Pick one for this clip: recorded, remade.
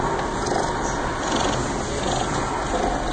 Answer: recorded